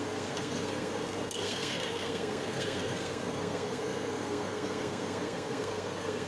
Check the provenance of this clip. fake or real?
fake